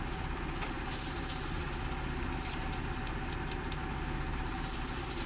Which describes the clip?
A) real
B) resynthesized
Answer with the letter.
B